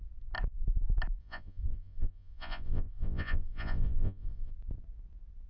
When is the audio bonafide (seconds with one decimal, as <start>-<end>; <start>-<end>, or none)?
0.0-1.2; 4.5-5.5